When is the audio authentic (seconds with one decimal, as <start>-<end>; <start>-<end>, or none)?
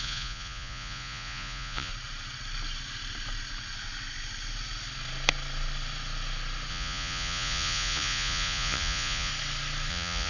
1.9-6.7; 9.3-9.9